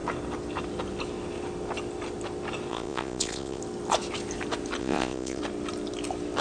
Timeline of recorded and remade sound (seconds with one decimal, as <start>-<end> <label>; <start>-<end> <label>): 0.0-2.7 recorded; 2.7-3.6 remade; 3.6-4.8 recorded; 4.8-5.4 remade; 5.4-6.4 recorded